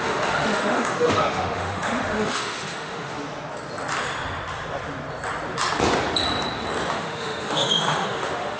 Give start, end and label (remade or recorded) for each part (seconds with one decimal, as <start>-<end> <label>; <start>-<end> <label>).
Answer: 0.0-3.2 remade; 3.2-6.9 recorded; 6.9-8.6 remade